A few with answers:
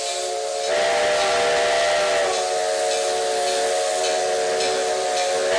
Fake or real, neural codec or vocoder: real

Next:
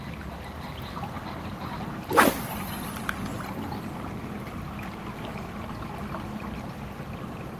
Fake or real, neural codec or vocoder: real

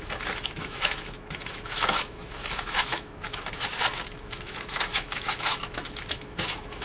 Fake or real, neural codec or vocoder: fake, autoencoder, DAC-VAE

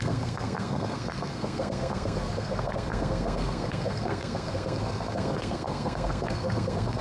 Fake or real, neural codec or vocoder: fake, codec, SNAC